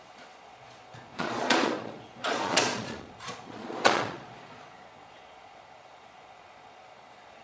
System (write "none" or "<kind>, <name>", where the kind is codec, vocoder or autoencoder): vocoder, Vocos